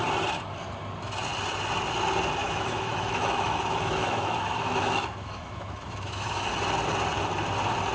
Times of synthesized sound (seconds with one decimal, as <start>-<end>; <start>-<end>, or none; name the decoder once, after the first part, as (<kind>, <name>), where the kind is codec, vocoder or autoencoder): 2.4-6.5 (autoencoder, DAC-VAE)